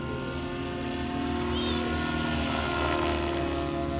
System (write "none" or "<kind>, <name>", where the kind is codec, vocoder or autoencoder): none